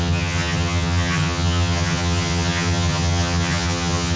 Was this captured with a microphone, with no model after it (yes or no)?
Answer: no